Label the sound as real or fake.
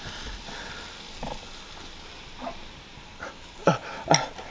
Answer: real